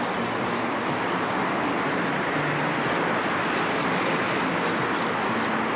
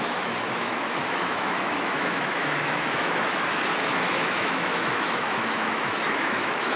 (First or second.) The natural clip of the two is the first